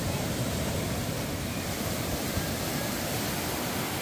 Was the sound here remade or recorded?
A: remade